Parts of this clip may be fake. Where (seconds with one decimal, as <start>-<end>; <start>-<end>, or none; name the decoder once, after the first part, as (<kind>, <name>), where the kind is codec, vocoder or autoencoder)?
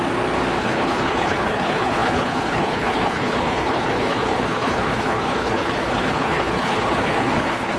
0.6-7.8 (codec, HILCodec)